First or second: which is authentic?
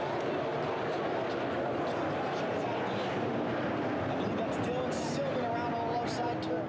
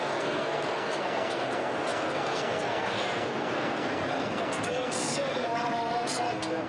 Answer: first